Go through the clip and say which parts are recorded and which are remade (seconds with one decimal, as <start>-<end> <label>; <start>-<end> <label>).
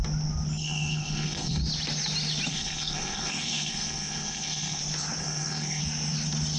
0.0-0.6 recorded; 0.6-1.6 remade; 1.6-2.5 recorded; 2.5-4.8 remade; 4.8-5.2 recorded; 5.2-5.8 remade; 5.8-6.6 recorded